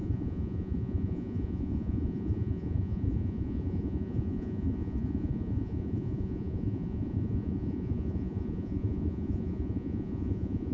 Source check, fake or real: fake